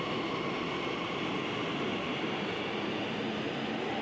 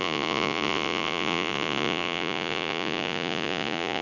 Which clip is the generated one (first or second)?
second